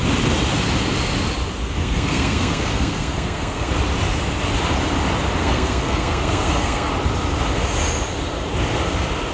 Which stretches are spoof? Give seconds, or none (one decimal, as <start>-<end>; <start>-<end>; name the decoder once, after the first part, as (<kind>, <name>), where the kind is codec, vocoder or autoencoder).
1.8-3.7 (codec, SNAC); 5.4-6.9